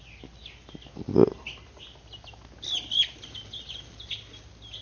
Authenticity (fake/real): real